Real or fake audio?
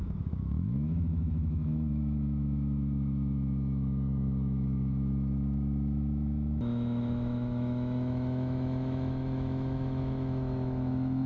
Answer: fake